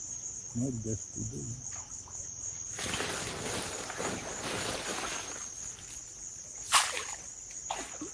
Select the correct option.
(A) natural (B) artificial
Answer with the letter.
A